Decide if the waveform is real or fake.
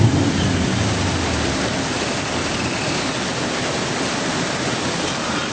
real